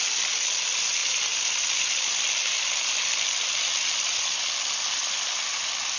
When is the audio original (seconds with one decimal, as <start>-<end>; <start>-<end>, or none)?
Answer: 0.0-6.0